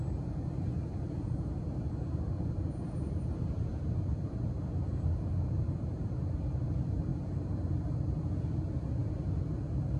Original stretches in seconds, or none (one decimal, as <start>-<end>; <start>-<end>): none